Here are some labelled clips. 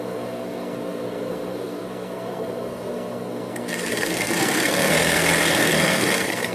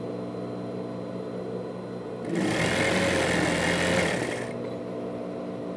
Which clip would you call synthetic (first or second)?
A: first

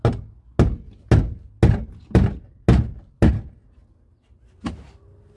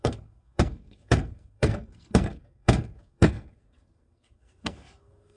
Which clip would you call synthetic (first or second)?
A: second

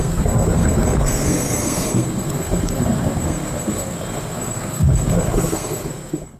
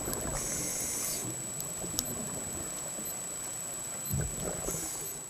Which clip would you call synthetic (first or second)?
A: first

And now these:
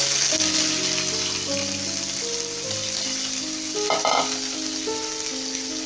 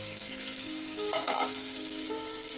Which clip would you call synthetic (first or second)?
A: second